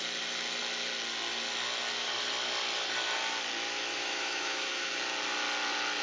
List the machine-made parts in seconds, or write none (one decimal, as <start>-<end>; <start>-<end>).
3.9-4.9